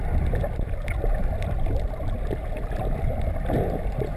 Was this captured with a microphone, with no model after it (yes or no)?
yes